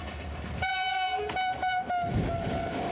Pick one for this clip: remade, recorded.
recorded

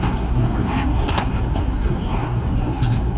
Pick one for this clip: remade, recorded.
remade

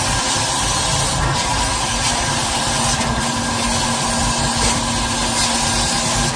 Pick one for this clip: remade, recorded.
recorded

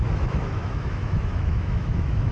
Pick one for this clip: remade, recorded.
remade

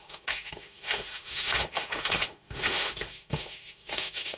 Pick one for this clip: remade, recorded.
remade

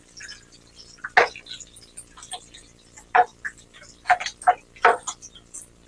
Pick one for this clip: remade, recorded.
recorded